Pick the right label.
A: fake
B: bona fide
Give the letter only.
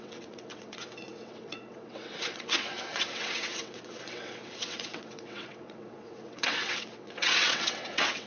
A